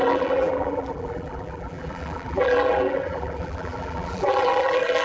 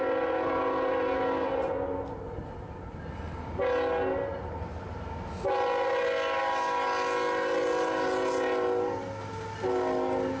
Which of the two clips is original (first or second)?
second